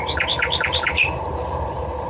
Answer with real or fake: fake